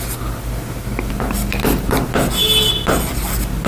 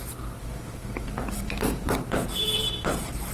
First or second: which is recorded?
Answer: first